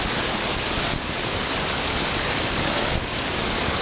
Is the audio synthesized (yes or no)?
yes